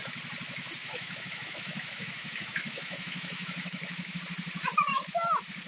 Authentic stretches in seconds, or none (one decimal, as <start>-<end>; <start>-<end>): 0.0-0.8; 4.2-4.9